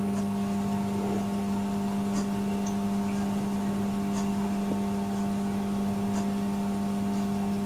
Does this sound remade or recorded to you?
recorded